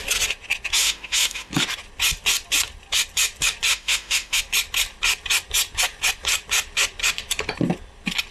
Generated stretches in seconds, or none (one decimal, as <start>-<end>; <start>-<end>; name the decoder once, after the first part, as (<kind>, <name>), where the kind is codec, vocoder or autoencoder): 0.8-1.5 (autoencoder, DAC-VAE); 3.7-4.4

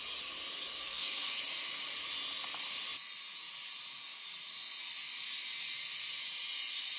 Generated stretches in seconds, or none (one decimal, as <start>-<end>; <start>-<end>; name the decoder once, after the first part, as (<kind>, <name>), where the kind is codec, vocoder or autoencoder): 0.8-1.4 (codec, SNAC)

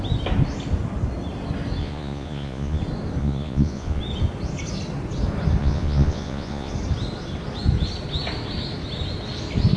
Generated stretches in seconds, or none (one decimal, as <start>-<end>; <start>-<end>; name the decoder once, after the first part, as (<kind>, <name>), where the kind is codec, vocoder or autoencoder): 1.8-2.8 (vocoder, Vocos); 3.2-4.0; 5.6-6.7

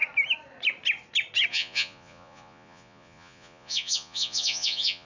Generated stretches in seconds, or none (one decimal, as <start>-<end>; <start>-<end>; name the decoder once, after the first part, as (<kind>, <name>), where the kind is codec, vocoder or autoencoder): 1.5-5.1 (vocoder, Vocos)

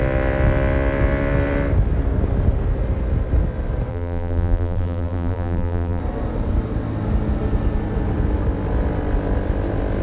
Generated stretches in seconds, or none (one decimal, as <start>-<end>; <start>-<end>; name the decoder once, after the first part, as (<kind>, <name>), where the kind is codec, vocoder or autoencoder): 3.9-6.0 (vocoder, BigVGAN v2)

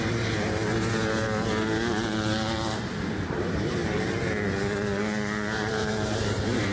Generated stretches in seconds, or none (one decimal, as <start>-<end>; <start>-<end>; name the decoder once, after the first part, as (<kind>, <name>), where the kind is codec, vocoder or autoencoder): 0.0-0.7 (vocoder, BigVGAN v2); 3.1-3.8; 5.8-6.7